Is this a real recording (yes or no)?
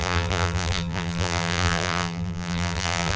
no